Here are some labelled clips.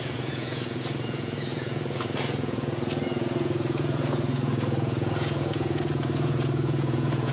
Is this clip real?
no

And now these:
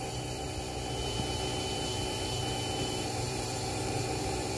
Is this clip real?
no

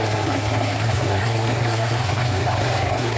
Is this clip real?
no